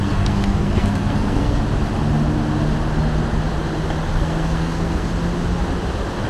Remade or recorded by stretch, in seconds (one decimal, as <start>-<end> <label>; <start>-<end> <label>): 0.0-1.6 remade; 1.6-4.1 recorded; 4.1-5.1 remade; 5.1-6.3 recorded